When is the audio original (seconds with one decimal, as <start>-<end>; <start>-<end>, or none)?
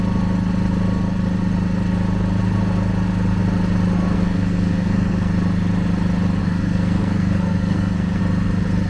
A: 0.0-4.1; 5.3-6.4; 8.2-8.9